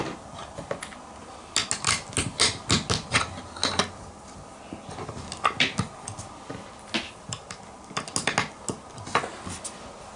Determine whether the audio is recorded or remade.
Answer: recorded